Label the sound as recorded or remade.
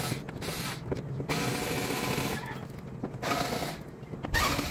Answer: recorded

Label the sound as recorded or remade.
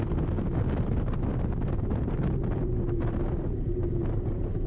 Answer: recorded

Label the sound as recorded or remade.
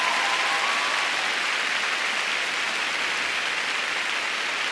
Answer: recorded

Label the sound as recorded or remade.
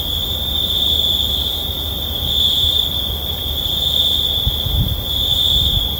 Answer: remade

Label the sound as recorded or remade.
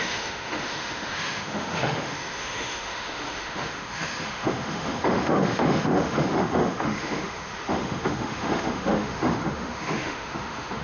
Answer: remade